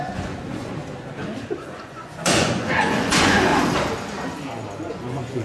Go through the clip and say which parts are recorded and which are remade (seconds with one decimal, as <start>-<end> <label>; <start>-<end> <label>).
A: 0.0-0.8 remade; 0.8-1.6 recorded; 1.6-3.5 remade; 3.5-4.9 recorded; 4.9-5.4 remade